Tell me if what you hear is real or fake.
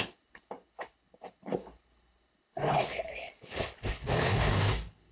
fake